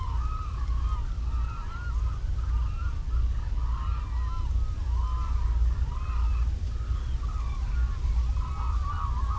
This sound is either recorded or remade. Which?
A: recorded